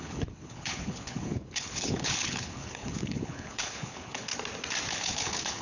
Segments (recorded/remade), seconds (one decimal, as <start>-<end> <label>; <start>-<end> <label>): 0.0-4.3 remade; 4.3-4.9 recorded; 4.9-5.6 remade